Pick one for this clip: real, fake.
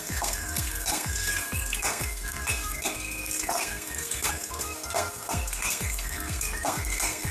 fake